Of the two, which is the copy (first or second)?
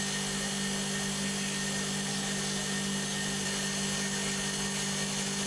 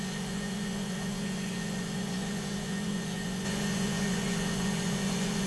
second